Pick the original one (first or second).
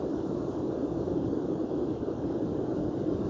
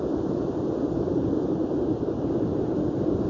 second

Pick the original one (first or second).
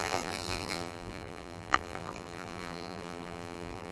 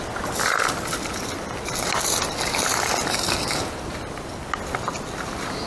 second